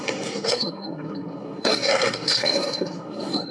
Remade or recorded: remade